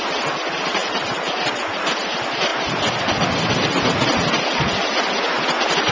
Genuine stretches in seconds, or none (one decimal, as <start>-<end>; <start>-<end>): 0.0-5.9